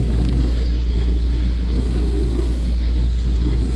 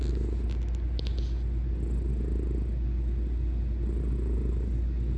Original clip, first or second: second